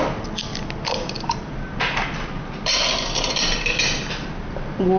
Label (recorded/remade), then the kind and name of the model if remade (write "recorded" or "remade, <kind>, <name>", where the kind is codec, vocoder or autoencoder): recorded